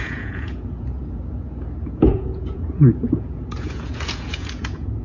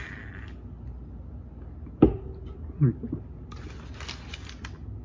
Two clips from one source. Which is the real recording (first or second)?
second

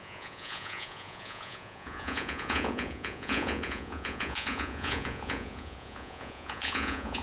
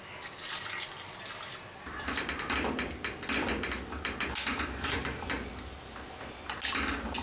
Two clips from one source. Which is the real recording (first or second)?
second